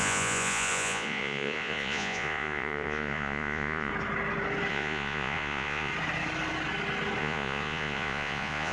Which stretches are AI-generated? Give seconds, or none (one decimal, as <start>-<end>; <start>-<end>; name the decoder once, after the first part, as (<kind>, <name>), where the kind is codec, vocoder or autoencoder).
0.0-3.9 (vocoder, Vocos); 4.7-5.9; 7.2-8.7